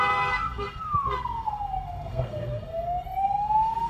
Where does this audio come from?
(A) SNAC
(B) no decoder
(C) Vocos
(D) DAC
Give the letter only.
A